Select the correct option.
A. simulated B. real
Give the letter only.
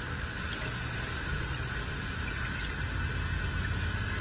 B